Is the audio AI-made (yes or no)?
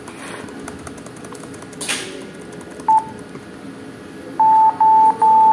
no